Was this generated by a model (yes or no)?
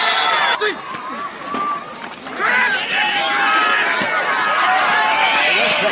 no